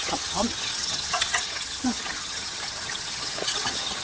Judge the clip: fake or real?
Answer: fake